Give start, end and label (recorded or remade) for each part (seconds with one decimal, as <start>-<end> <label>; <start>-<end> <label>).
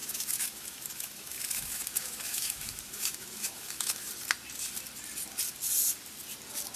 0.0-4.1 remade; 4.1-6.8 recorded